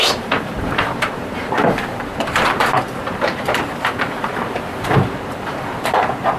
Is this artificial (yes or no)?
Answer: yes